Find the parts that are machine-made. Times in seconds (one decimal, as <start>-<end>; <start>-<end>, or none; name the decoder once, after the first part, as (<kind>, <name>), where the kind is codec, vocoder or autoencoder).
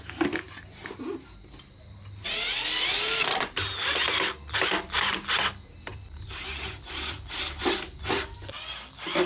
none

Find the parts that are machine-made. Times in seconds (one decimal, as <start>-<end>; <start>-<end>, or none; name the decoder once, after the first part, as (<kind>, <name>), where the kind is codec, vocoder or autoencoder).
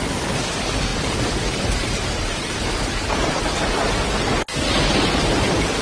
0.9-3.4 (vocoder, BigVGAN v2)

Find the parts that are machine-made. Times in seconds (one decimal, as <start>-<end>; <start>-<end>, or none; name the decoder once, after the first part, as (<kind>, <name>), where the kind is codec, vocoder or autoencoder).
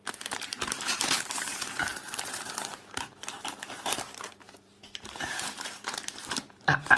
0.0-7.0 (vocoder, BigVGAN v2)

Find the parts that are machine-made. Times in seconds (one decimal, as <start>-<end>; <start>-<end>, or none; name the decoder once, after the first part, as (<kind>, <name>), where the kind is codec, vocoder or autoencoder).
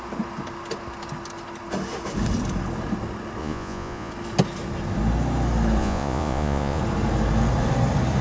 3.4-4.1 (vocoder, Vocos); 5.8-6.8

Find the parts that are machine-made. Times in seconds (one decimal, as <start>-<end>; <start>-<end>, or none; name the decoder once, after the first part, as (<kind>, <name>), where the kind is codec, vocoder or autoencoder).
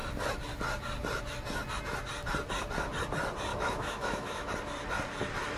3.5-4.5 (autoencoder, DAC-VAE)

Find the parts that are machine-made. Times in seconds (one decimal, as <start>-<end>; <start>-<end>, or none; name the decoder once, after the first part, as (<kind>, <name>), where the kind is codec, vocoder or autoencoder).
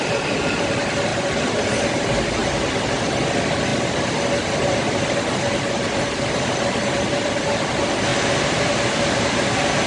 0.0-2.4 (vocoder, BigVGAN v2); 3.0-3.7; 5.6-8.1; 8.6-9.9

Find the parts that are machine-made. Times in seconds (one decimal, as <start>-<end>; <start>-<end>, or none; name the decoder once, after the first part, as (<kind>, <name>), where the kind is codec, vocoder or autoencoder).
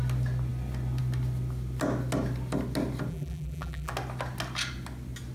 3.1-3.9 (vocoder, BigVGAN v2)